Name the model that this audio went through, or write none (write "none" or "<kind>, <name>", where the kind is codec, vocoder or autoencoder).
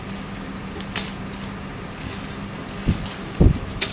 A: vocoder, BigVGAN v2